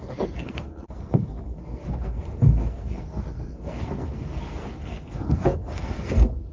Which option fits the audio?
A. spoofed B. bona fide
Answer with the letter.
A